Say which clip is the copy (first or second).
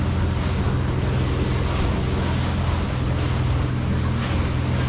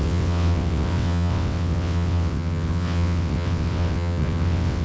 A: second